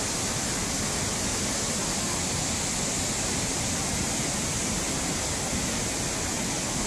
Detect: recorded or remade recorded